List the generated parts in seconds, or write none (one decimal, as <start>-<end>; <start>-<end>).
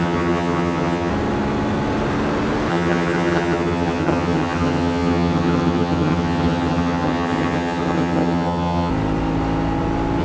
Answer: 0.0-1.1; 2.7-8.9